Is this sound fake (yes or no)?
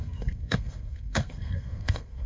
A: yes